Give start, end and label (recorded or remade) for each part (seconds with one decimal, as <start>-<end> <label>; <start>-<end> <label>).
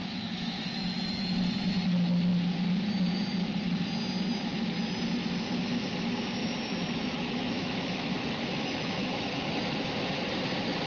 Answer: 0.0-1.7 remade; 1.7-6.4 recorded; 6.4-9.6 remade; 9.6-10.9 recorded